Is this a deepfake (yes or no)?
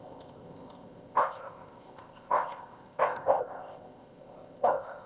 yes